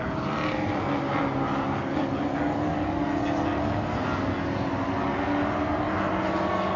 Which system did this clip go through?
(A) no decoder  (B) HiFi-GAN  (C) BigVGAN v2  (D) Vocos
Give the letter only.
A